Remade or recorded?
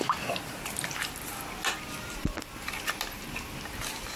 recorded